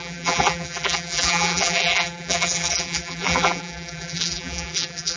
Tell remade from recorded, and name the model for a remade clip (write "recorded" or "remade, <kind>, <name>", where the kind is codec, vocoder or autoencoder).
remade, vocoder, BigVGAN v2